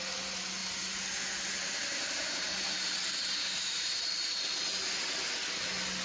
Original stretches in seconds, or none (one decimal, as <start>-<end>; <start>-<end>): 0.0-0.6; 1.2-1.8; 3.9-6.0